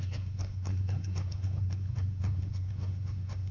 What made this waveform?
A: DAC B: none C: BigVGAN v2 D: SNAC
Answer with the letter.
D